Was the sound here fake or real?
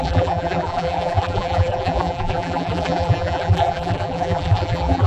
fake